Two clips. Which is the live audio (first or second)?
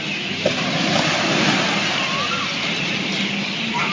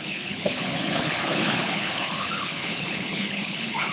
first